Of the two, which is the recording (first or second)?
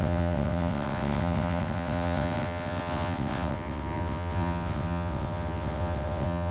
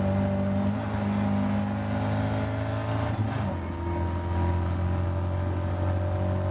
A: second